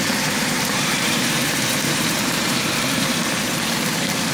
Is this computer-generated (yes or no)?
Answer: yes